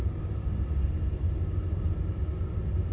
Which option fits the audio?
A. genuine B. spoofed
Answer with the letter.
A